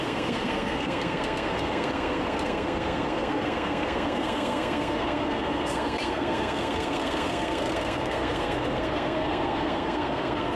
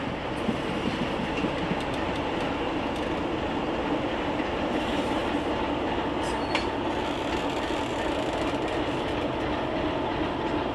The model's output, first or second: first